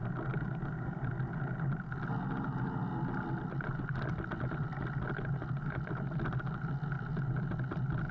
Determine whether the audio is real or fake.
real